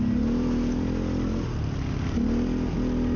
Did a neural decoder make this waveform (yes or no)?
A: no